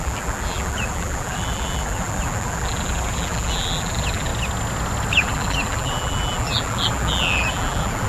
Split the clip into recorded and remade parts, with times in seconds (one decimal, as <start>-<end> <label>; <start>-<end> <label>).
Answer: 0.0-4.3 remade; 4.3-5.1 recorded; 5.1-8.1 remade